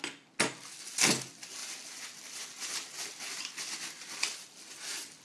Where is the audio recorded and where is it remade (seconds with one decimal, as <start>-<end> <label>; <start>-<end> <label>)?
0.0-5.2 recorded